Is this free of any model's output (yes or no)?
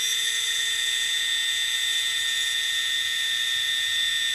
yes